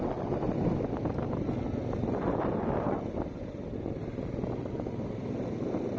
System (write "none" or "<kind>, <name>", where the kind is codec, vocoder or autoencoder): none